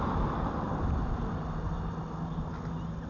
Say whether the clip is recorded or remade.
recorded